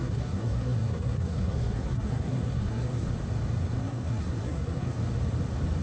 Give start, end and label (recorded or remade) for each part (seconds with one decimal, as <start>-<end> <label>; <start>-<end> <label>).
0.0-3.1 remade; 3.1-3.8 recorded; 3.8-5.0 remade; 5.0-5.8 recorded